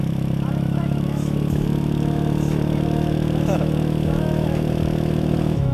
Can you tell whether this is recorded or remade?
remade